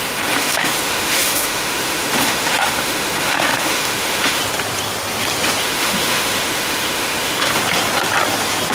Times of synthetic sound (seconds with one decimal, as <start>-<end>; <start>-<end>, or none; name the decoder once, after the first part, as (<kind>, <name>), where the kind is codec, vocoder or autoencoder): 0.0-4.4 (autoencoder, DAC-VAE); 5.6-7.6